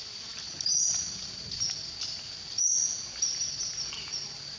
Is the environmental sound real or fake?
real